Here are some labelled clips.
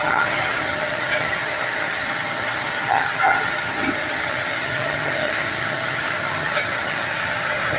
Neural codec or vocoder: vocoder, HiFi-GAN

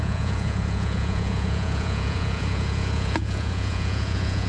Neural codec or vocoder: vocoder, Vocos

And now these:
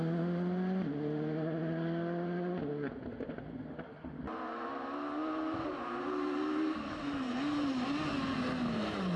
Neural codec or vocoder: none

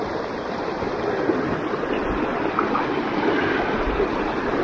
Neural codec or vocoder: none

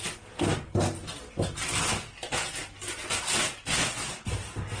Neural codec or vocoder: none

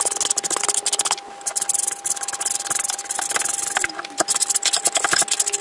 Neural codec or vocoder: none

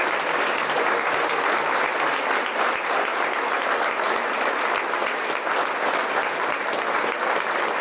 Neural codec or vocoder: none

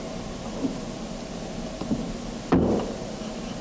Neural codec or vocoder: none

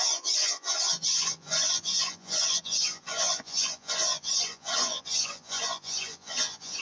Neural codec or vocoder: vocoder, Vocos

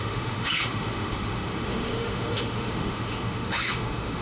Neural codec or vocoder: autoencoder, DAC-VAE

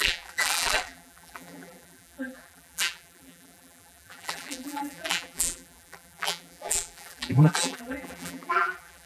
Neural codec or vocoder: vocoder, BigVGAN v2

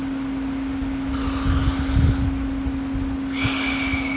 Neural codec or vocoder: none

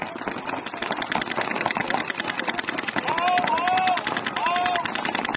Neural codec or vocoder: none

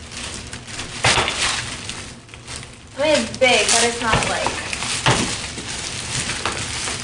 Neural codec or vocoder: none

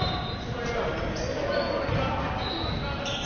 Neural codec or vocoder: none